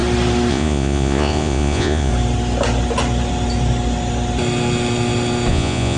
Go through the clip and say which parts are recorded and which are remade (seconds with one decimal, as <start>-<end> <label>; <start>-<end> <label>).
0.0-0.5 recorded; 0.5-2.1 remade; 2.1-5.5 recorded; 5.5-6.0 remade

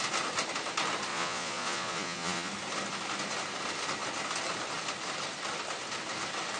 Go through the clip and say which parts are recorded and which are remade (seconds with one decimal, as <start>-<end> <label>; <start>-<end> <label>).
0.0-1.1 recorded; 1.1-2.5 remade; 2.5-6.6 recorded

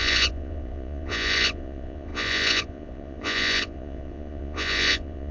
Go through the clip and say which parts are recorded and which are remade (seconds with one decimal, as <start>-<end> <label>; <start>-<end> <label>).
0.0-5.3 remade